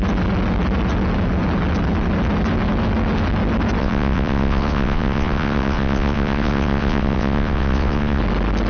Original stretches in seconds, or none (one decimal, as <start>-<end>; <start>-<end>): 0.0-3.8; 8.2-8.7